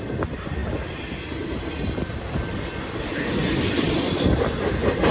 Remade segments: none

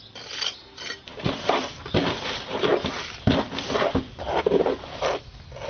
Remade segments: none

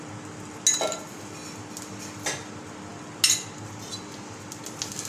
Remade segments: none

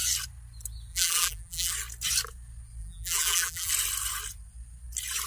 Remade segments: 0.9-1.7 (vocoder, BigVGAN v2); 2.8-3.7

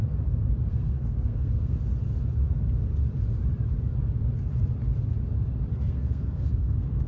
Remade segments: 0.7-1.8 (codec, SNAC); 5.7-7.1

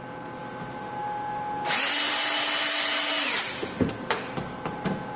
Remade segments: none

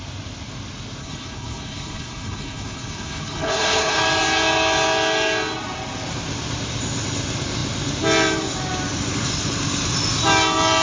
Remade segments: 1.0-4.0 (codec, HILCodec)

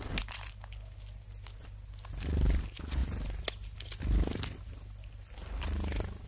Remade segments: none